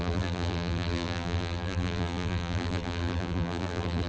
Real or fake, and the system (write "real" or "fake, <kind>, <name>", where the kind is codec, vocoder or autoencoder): fake, vocoder, BigVGAN v2